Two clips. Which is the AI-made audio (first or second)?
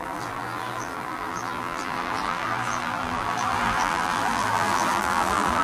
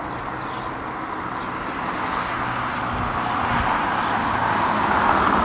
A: first